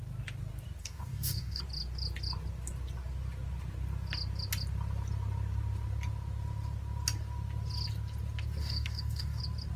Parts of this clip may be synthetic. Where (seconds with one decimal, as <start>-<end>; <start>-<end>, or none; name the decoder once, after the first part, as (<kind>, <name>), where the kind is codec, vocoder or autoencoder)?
0.8-1.6 (codec, DAC); 8.6-9.4

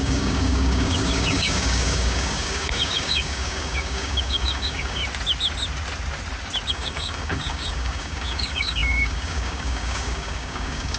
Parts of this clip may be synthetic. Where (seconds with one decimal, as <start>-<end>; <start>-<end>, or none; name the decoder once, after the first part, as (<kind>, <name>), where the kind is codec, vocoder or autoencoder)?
0.0-5.0 (codec, DAC); 6.7-11.0

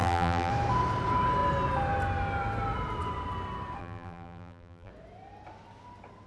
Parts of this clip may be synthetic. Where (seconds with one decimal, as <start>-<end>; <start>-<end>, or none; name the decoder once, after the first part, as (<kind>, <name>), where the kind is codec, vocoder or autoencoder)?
0.0-0.5 (vocoder, BigVGAN v2); 3.8-4.9